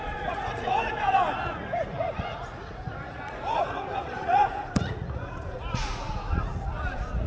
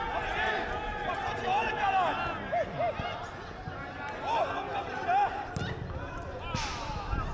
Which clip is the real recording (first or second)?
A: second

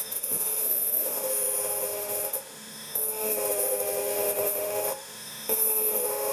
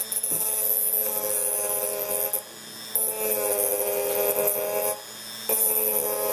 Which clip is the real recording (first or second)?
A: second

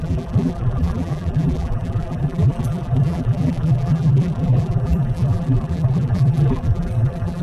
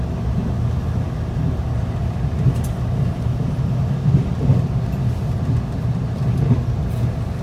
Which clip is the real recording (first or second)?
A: second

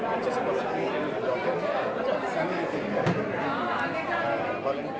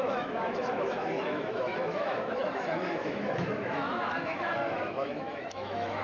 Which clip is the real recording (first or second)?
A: first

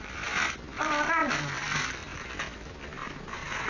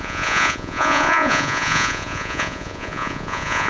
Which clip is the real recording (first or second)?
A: first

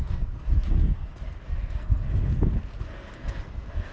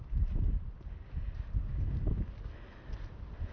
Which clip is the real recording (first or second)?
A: second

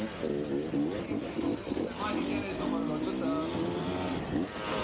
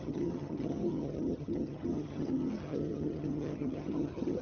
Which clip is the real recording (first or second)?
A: first